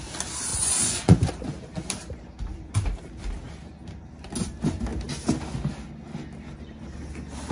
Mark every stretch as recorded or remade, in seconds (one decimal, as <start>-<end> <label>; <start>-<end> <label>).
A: 0.0-0.5 recorded; 0.5-1.3 remade; 1.3-7.5 recorded